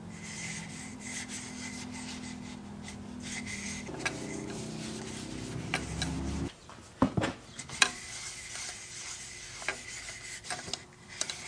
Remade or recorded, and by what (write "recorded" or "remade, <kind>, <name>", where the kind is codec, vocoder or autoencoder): recorded